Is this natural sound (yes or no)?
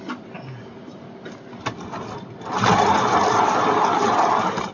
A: yes